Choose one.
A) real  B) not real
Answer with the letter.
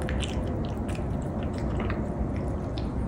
A